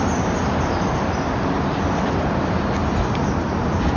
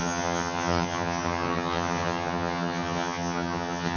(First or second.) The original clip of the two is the first